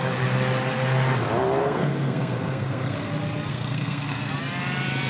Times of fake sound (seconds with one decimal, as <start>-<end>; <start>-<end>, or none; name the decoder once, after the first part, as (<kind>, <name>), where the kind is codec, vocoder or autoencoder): 1.6-3.1 (codec, SNAC); 3.5-4.3